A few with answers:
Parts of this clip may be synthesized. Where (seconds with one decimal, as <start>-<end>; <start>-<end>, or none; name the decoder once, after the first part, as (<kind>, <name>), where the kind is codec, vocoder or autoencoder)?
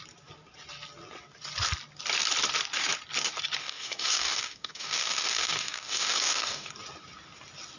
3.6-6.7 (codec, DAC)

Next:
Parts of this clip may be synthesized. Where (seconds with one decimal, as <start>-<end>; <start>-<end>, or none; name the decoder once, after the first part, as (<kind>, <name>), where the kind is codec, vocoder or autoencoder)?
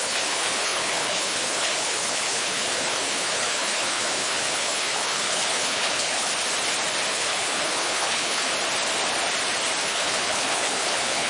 0.0-6.3 (codec, HILCodec); 7.1-8.5; 9.8-11.3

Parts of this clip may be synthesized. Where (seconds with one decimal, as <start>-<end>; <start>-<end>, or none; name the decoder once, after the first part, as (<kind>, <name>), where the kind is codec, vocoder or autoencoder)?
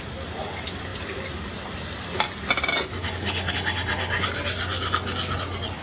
none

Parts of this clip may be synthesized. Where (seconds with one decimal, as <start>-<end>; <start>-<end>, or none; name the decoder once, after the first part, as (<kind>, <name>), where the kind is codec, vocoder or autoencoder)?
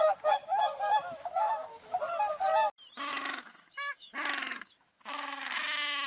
0.4-2.0 (autoencoder, DAC-VAE); 3.1-6.1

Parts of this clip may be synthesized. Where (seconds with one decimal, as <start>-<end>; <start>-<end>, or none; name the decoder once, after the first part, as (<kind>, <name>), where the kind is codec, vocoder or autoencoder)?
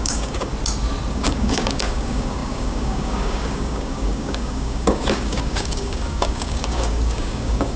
0.0-0.5 (codec, DAC); 1.1-7.8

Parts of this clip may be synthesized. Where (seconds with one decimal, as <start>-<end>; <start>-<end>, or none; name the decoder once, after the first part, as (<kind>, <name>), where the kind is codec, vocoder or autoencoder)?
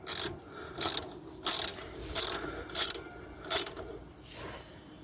1.7-3.9 (vocoder, BigVGAN v2)